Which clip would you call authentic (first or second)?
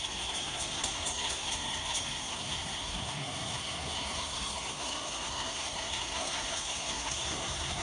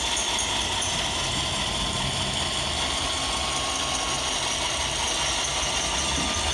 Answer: second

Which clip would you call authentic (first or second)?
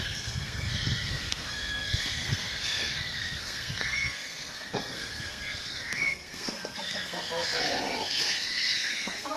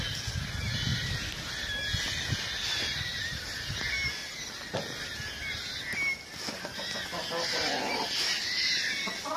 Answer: second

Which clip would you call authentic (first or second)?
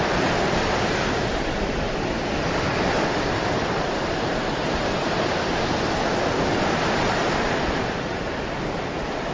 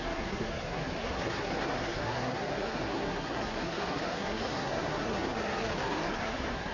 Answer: first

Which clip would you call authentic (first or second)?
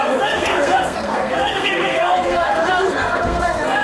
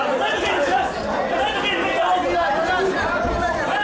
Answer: second